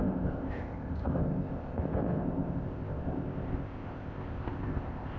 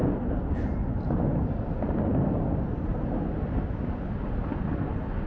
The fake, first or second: first